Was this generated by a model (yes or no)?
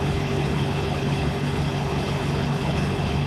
yes